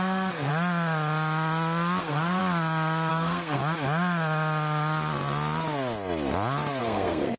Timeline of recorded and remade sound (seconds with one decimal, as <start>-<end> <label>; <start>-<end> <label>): 0.0-0.5 remade; 0.5-2.0 recorded; 2.0-2.4 remade; 2.4-3.1 recorded; 3.1-3.6 remade; 3.6-6.8 recorded; 6.8-7.4 remade